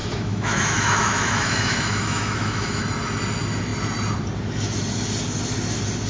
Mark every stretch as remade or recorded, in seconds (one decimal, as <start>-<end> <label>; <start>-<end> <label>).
0.0-2.8 remade; 2.8-6.1 recorded